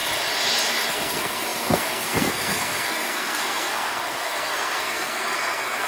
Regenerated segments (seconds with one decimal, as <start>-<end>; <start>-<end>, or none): 0.9-5.9